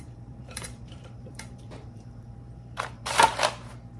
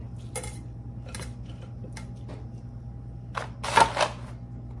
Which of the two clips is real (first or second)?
second